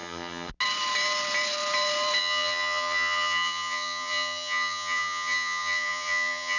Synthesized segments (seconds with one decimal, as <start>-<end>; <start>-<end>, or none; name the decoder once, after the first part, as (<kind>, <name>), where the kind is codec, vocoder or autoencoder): 0.0-0.5 (vocoder, HiFi-GAN); 2.2-6.6